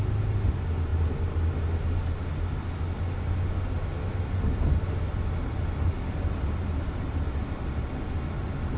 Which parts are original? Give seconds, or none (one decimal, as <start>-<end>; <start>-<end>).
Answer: 0.0-8.8